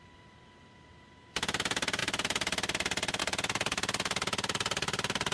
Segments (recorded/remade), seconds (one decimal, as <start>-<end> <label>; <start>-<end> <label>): 0.0-5.3 recorded